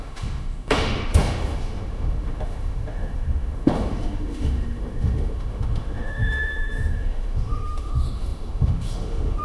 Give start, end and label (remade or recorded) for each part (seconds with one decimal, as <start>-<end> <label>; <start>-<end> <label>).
0.0-9.4 remade